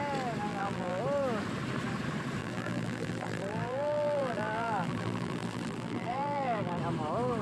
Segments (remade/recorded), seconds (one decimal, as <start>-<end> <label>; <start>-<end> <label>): 0.0-0.5 recorded; 0.5-1.0 remade; 1.0-2.4 recorded; 2.4-6.8 remade; 6.8-7.4 recorded